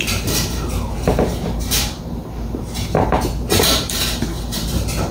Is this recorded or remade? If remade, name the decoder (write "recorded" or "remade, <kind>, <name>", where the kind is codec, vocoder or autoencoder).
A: remade, vocoder, BigVGAN v2